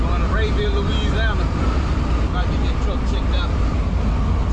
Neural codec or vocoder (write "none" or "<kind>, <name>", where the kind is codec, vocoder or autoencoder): none